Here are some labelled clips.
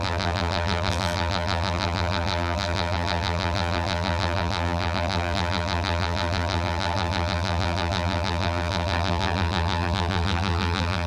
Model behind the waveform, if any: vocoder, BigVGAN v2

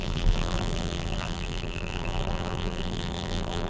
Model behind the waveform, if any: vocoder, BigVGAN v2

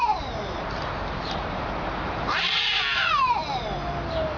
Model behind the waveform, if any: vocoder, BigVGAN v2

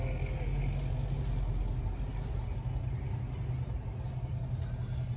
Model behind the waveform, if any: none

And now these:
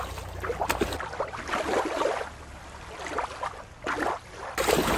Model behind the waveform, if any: none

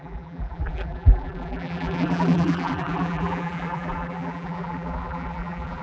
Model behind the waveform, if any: vocoder, BigVGAN v2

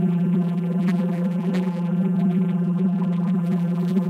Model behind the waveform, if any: vocoder, BigVGAN v2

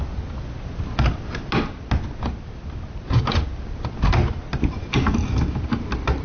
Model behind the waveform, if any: none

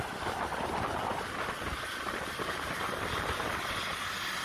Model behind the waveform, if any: none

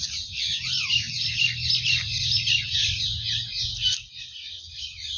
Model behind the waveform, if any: none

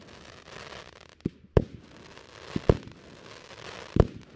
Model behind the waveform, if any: none